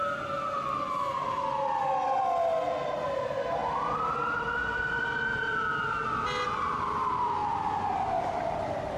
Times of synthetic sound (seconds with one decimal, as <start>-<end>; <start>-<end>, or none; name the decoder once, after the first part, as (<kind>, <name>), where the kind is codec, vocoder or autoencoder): none